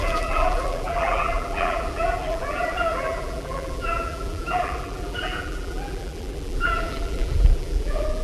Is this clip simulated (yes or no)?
yes